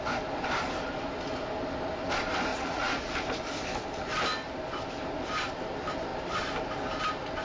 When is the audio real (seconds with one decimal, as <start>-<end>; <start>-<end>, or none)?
0.0-2.5; 3.1-7.4